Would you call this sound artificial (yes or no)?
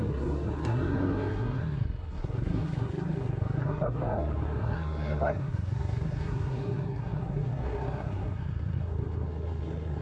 yes